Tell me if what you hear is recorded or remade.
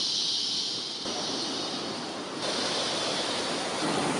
recorded